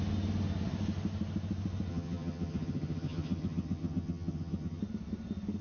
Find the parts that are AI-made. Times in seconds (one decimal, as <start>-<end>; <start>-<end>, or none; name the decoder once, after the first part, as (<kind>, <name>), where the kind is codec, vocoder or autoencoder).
1.9-4.8 (vocoder, HiFi-GAN)